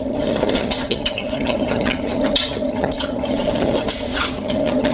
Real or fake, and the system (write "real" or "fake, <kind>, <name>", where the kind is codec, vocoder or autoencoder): fake, vocoder, HiFi-GAN